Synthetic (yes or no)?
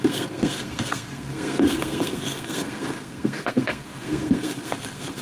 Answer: yes